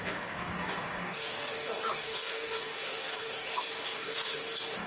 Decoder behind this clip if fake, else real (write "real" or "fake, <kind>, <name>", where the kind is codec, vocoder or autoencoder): fake, codec, DAC